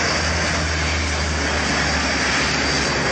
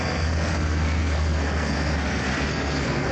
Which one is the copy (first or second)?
second